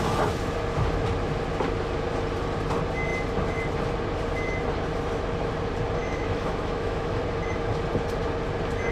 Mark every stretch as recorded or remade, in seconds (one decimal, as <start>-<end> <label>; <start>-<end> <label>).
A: 0.0-6.0 recorded; 6.0-7.2 remade; 7.2-8.9 recorded